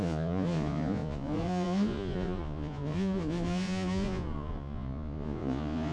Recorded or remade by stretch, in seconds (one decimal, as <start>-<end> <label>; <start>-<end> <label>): 0.0-5.9 remade